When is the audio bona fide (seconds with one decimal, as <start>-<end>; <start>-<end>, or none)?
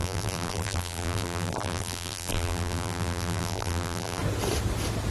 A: 4.2-5.1